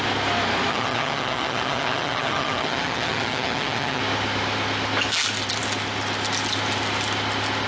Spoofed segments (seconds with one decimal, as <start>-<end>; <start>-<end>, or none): 0.7-4.0